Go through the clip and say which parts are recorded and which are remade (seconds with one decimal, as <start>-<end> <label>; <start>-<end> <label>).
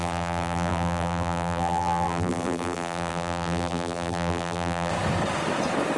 0.0-4.9 remade; 4.9-6.0 recorded